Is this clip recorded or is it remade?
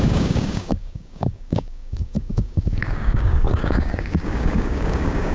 remade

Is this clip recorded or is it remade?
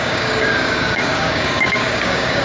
remade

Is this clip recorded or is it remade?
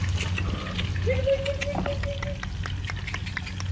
recorded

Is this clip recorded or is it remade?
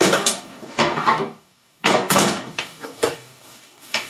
remade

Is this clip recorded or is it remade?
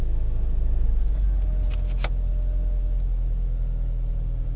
recorded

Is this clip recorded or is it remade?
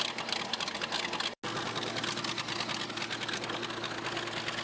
recorded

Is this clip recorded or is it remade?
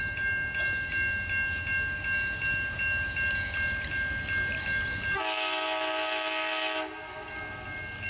recorded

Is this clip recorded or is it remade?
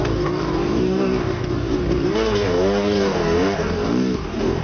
remade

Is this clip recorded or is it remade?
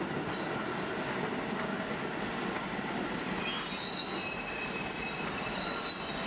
recorded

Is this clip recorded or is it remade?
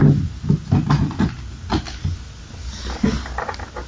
recorded